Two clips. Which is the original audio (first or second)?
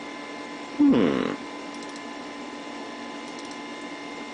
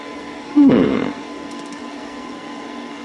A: first